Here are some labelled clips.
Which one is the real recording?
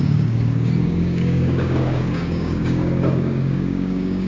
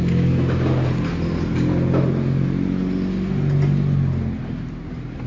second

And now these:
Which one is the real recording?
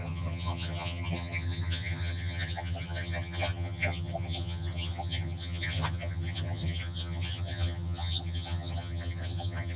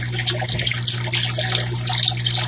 second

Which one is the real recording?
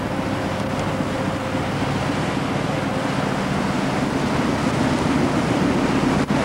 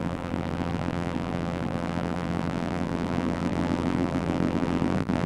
first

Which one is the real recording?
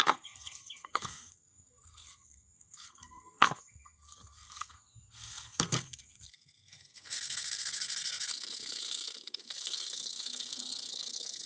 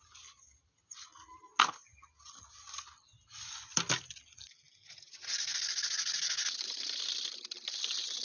second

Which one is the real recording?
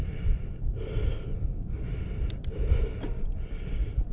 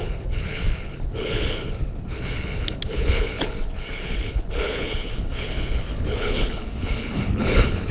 first